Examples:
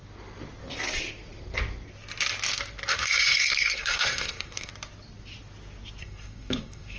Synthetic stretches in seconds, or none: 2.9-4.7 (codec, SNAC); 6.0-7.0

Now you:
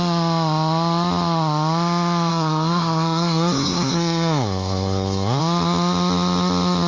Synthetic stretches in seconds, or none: 2.3-5.4 (codec, SNAC)